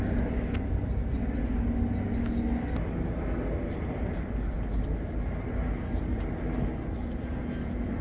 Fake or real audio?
real